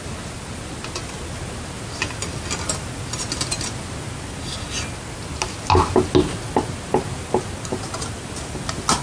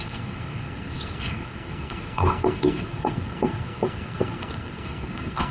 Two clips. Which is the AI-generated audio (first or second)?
second